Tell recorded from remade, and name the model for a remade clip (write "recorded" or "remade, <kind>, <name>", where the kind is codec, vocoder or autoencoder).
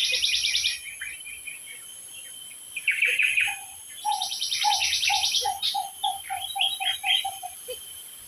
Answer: remade, vocoder, BigVGAN v2